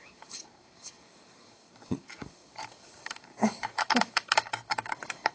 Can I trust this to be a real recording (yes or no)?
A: no